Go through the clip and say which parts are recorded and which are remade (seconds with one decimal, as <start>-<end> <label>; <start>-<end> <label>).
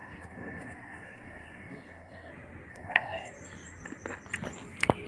0.0-2.3 remade; 2.3-2.7 recorded; 2.7-3.3 remade; 3.3-5.1 recorded